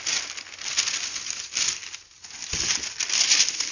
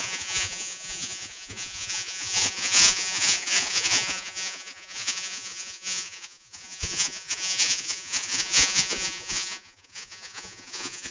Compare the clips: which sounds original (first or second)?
first